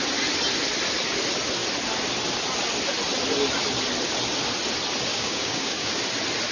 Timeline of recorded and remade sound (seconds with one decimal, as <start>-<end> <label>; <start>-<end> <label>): 0.0-5.1 recorded; 5.1-5.9 remade; 5.9-6.5 recorded